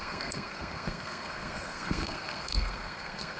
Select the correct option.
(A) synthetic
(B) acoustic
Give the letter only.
A